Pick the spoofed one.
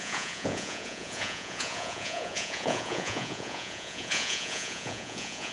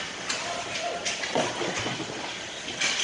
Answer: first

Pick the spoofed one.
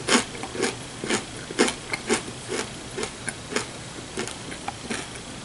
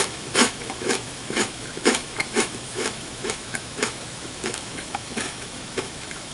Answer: second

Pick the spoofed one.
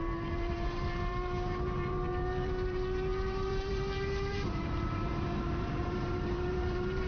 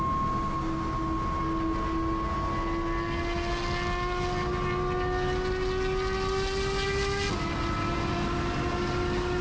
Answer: first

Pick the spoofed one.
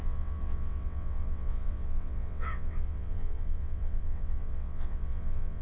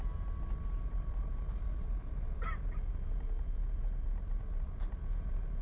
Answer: first